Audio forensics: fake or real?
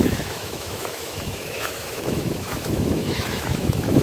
fake